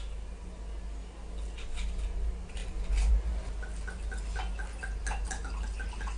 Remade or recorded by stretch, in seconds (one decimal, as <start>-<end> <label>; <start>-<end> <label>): 0.0-6.2 recorded